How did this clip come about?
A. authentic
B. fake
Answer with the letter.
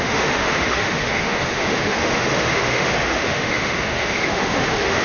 B